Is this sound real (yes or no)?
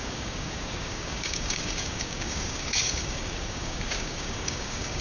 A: no